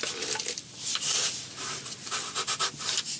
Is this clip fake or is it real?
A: real